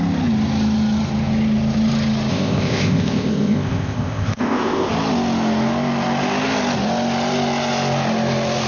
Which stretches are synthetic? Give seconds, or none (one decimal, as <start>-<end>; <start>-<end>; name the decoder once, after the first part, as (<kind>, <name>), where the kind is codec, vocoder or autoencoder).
2.3-4.9 (codec, ZipCodec)